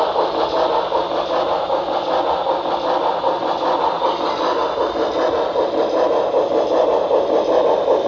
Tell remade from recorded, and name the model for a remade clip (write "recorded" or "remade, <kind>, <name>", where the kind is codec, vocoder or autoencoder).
recorded